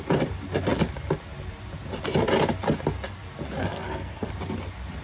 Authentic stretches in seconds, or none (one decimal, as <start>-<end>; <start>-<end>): 0.0-3.6; 4.3-5.0